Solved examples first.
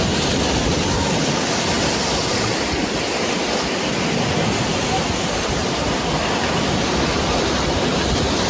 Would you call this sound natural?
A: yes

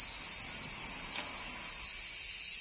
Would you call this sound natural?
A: yes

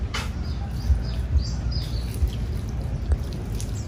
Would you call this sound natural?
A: yes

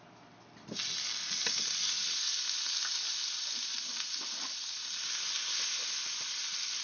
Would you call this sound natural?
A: yes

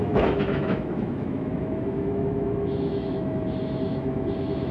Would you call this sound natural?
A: no